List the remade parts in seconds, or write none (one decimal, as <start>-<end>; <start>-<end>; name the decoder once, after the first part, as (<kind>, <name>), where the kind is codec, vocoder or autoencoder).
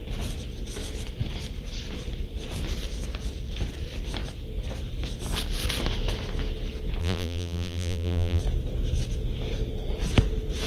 7.0-8.4 (vocoder, BigVGAN v2)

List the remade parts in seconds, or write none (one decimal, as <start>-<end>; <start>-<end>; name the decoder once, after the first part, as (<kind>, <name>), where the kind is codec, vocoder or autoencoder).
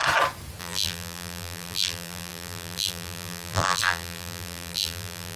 0.6-5.4 (vocoder, BigVGAN v2)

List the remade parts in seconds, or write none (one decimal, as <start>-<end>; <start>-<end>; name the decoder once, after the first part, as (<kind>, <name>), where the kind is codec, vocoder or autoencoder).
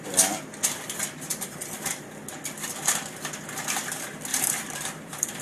1.3-2.0 (vocoder, BigVGAN v2); 4.3-5.4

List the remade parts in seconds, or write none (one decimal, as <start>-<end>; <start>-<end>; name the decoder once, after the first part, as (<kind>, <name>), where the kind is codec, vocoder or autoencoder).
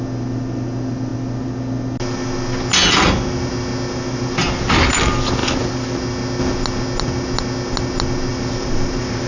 8.3-9.3 (vocoder, BigVGAN v2)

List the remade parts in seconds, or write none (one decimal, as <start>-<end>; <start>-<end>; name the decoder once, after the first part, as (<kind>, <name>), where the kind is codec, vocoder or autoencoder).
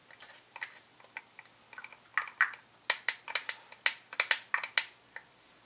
0.0-2.1 (vocoder, BigVGAN v2); 5.3-5.7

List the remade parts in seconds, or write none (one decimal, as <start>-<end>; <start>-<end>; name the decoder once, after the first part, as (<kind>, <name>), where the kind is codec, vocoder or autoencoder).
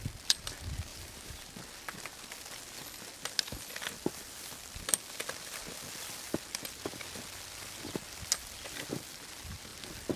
0.9-1.4 (vocoder, BigVGAN v2)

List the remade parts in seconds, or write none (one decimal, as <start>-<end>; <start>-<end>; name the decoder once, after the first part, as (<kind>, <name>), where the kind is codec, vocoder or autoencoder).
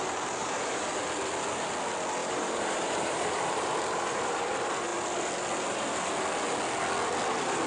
0.4-0.9 (vocoder, BigVGAN v2); 2.2-4.5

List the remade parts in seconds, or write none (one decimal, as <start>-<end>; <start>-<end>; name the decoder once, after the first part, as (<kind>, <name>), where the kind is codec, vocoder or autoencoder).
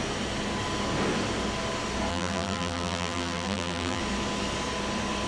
2.1-4.0 (vocoder, BigVGAN v2)